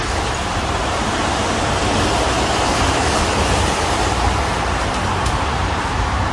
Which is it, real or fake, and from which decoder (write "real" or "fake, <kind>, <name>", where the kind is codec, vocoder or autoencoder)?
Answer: fake, vocoder, BigVGAN v2